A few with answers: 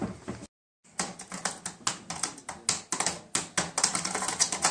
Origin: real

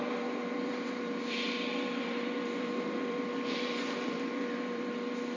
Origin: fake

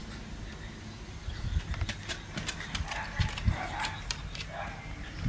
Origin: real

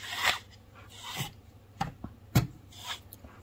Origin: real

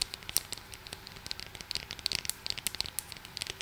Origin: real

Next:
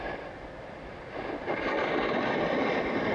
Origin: fake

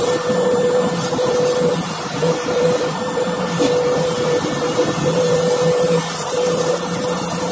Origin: real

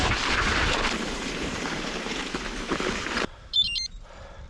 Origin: fake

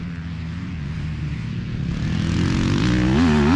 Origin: real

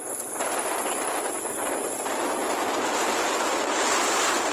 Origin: real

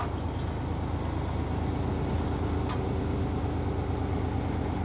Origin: real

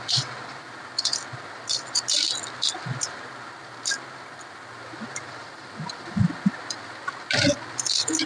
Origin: real